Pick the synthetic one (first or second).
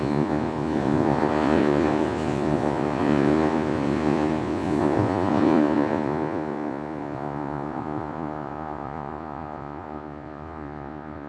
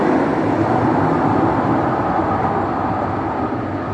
first